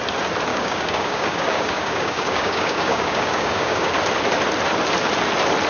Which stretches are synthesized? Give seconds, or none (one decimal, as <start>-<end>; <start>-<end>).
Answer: 0.5-3.9